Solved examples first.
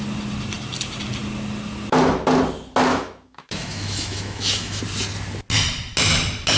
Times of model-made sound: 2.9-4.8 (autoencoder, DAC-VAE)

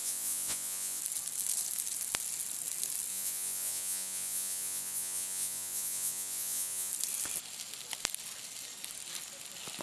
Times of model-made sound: 0.0-1.0 (vocoder, Vocos); 3.1-6.9

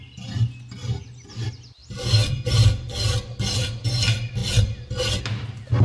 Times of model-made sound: none

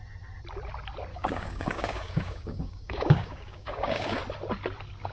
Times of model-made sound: 1.1-4.2 (codec, DAC)

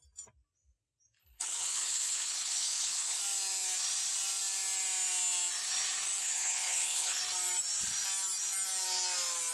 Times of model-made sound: 1.2-3.2 (codec, HILCodec); 6.2-7.2